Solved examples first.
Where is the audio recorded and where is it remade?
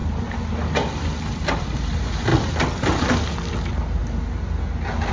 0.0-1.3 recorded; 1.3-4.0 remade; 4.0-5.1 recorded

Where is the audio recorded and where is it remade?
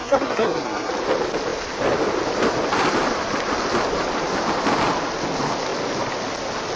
0.0-0.9 remade; 0.9-6.8 recorded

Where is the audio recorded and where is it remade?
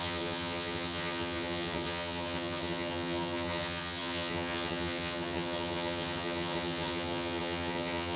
0.0-8.2 remade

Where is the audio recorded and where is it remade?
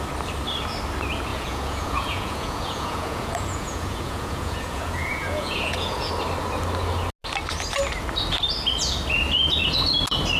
0.0-1.3 recorded; 1.3-6.1 remade; 6.1-10.4 recorded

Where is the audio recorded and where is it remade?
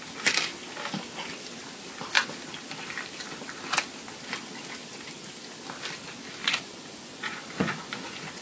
0.0-6.4 recorded; 6.4-8.4 remade